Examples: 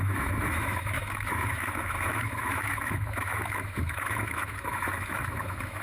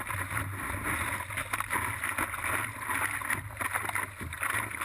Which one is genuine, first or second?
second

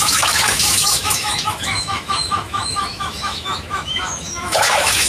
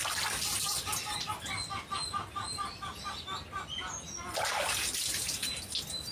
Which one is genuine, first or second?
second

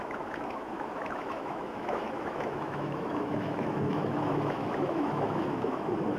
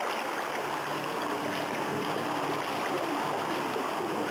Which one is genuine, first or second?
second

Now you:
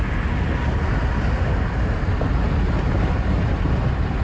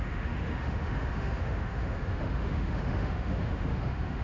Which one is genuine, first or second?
first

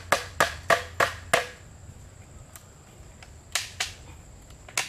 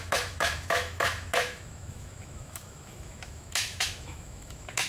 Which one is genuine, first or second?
first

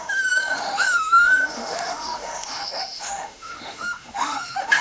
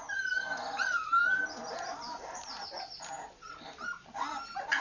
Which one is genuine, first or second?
second